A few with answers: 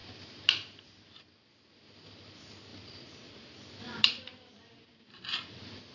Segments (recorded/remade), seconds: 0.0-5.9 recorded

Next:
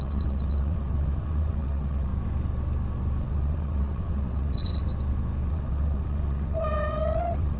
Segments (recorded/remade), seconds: 0.0-2.1 remade; 2.1-3.2 recorded; 3.2-4.8 remade; 4.8-5.5 recorded; 5.5-7.6 remade

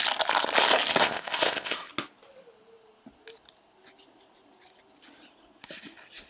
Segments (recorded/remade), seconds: 0.0-1.0 recorded; 1.0-1.9 remade; 1.9-6.3 recorded

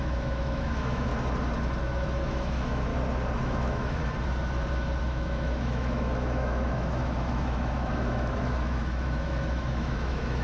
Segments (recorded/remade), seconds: 0.0-1.1 remade; 1.1-1.8 recorded; 1.8-2.9 remade; 2.9-3.4 recorded; 3.4-4.0 remade; 4.0-5.0 recorded; 5.0-10.4 remade

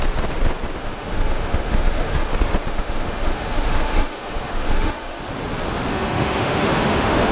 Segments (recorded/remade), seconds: 0.0-0.8 recorded; 0.8-2.3 remade; 2.3-2.7 recorded; 2.7-5.2 remade; 5.2-5.9 recorded; 5.9-7.3 remade

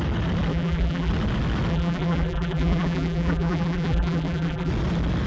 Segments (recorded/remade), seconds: 0.0-0.5 recorded; 0.5-1.1 remade; 1.1-1.7 recorded; 1.7-4.7 remade; 4.7-5.3 recorded

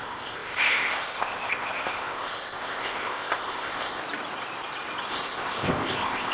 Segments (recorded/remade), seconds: 0.0-4.0 remade; 4.0-5.1 recorded; 5.1-6.3 remade

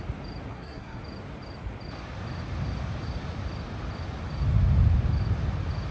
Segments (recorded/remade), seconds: 0.0-0.5 recorded; 0.5-1.0 remade; 1.0-5.9 recorded